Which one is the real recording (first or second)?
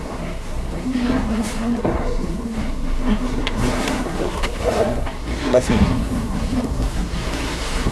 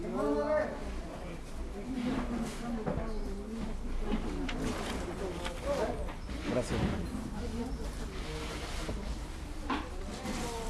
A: second